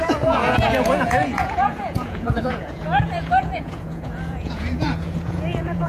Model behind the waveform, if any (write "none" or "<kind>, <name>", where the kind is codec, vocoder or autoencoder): vocoder, Vocos